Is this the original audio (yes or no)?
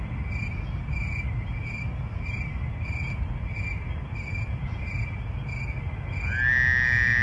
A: yes